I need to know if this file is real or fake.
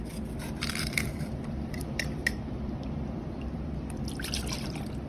fake